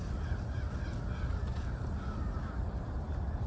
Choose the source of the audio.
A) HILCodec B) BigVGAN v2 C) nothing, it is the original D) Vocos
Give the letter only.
C